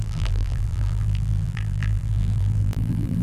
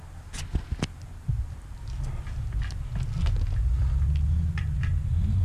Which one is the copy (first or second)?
first